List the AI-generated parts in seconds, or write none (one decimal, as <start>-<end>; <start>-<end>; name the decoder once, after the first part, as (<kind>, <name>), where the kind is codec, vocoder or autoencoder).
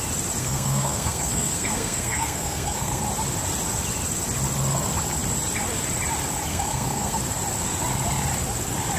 0.4-3.0 (codec, SNAC); 6.5-7.2